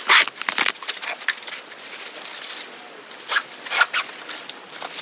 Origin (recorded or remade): recorded